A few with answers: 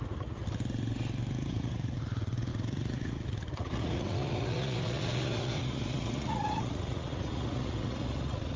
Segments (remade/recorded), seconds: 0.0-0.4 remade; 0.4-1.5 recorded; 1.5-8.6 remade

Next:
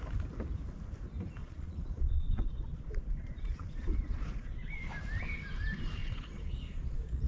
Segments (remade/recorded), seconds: 0.0-1.4 recorded; 1.4-4.9 remade; 4.9-6.0 recorded; 6.0-7.3 remade

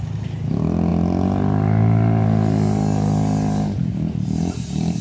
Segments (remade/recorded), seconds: 0.0-5.0 recorded

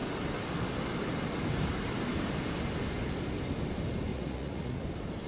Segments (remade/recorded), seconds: 0.0-4.1 recorded; 4.1-4.8 remade; 4.8-5.3 recorded

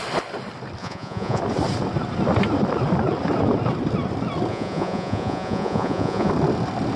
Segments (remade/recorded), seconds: 0.0-0.8 recorded; 0.8-1.4 remade; 1.4-4.5 recorded; 4.5-6.3 remade; 6.3-7.0 recorded

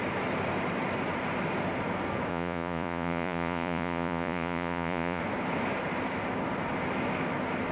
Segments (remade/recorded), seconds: 0.0-2.3 recorded; 2.3-5.2 remade; 5.2-7.7 recorded

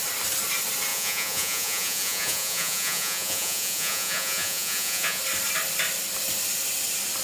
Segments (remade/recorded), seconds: 0.0-0.9 recorded; 0.9-5.2 remade; 5.2-7.2 recorded

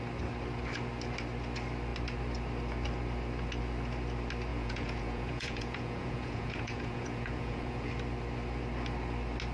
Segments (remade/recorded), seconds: 0.0-4.5 recorded; 4.5-7.9 remade; 7.9-9.5 recorded